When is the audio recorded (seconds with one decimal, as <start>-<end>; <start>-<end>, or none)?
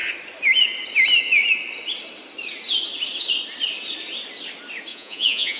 0.0-4.9